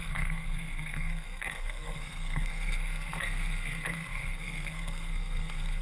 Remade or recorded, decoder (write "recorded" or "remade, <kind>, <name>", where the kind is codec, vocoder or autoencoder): remade, codec, SNAC